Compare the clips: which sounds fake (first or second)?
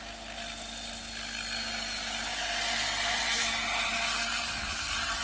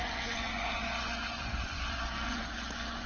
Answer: second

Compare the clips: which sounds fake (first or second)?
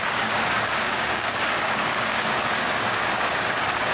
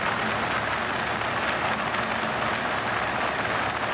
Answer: first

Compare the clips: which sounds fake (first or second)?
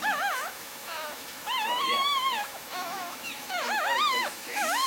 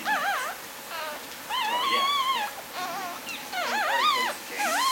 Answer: first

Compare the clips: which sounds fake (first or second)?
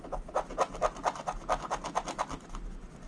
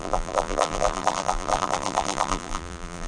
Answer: second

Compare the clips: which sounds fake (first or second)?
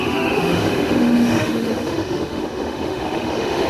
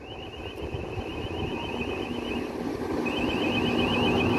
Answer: first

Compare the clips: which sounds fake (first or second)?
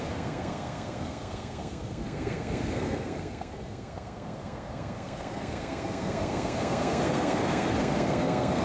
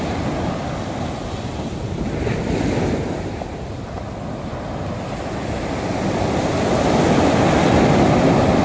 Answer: first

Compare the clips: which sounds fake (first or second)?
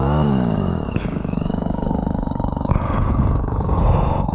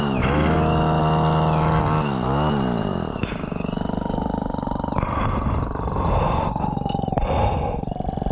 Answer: first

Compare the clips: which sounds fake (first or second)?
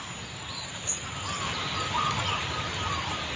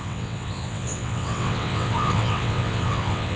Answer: second